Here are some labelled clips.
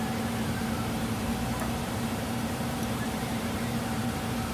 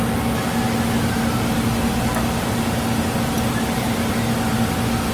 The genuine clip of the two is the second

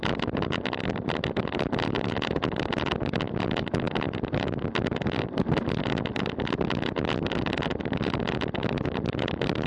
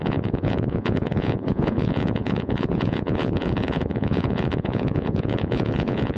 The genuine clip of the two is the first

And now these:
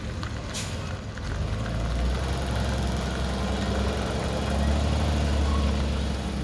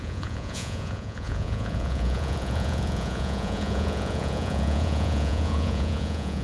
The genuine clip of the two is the first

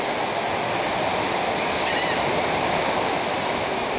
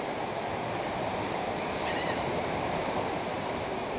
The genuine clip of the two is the first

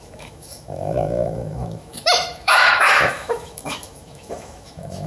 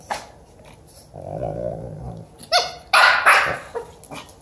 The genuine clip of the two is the second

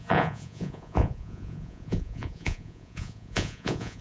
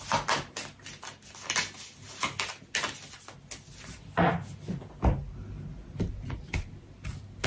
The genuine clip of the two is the second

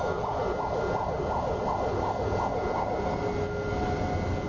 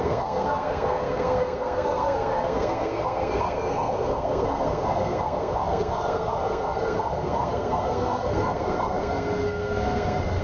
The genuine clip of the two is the first